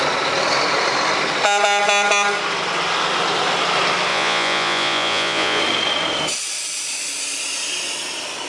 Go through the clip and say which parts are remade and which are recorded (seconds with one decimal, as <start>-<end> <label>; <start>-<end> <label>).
0.0-4.1 recorded; 4.1-5.6 remade; 5.6-8.5 recorded